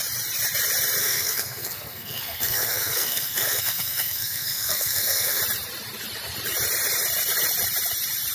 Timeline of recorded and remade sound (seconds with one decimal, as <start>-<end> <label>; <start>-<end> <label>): 0.0-1.0 recorded; 1.0-5.4 remade; 5.4-8.3 recorded